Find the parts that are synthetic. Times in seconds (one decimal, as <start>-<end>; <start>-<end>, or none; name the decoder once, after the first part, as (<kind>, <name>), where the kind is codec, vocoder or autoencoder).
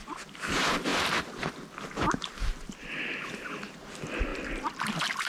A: none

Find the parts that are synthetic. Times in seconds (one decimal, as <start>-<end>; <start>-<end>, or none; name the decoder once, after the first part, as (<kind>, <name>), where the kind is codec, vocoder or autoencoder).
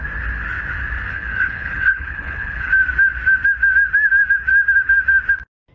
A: 1.1-2.7 (codec, HILCodec)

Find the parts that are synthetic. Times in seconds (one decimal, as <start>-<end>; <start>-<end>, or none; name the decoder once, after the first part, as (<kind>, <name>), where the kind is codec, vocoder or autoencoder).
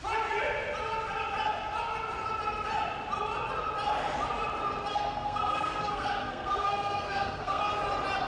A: 4.9-7.6 (codec, SNAC)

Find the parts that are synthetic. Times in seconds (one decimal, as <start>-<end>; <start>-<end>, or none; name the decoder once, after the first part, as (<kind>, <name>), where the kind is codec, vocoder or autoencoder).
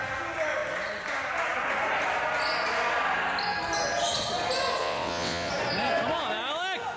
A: 4.8-5.5 (vocoder, WaveNeXt)